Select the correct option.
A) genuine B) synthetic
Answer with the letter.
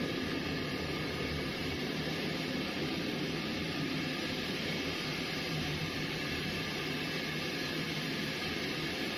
B